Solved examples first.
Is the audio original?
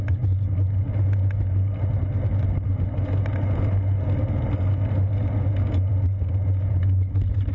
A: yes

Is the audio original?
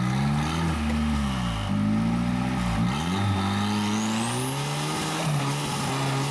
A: yes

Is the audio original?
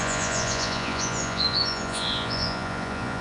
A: no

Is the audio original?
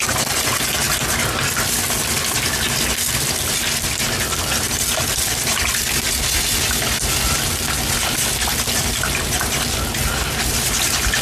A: yes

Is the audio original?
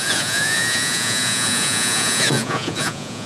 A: no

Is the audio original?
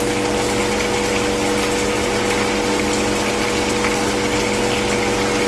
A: yes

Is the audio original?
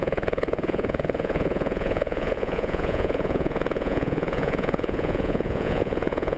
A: no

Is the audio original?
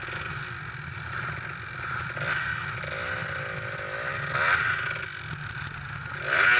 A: yes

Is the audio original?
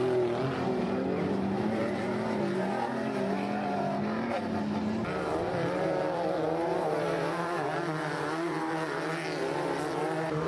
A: yes